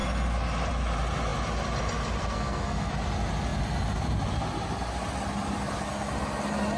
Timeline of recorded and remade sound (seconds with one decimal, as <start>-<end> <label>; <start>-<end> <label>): 0.0-2.2 recorded; 2.2-2.9 remade; 2.9-6.8 recorded